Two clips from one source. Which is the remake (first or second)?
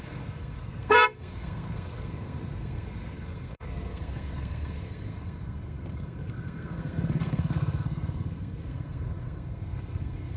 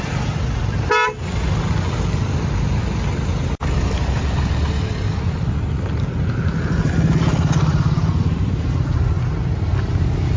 first